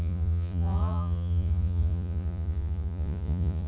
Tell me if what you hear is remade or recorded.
remade